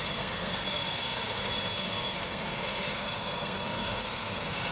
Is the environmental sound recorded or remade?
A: remade